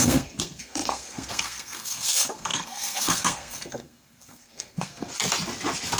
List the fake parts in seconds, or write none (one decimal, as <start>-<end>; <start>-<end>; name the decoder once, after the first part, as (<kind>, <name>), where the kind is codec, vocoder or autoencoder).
0.0-5.1 (codec, SNAC)